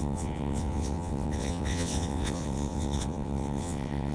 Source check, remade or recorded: remade